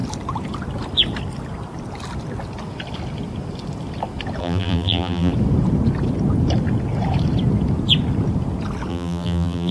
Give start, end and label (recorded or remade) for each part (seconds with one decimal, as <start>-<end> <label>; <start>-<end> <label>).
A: 0.0-4.4 recorded; 4.4-5.3 remade; 5.3-8.9 recorded; 8.9-9.7 remade